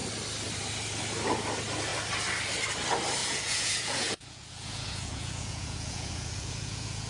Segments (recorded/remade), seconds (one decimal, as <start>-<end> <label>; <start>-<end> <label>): 0.0-3.2 recorded; 3.2-7.1 remade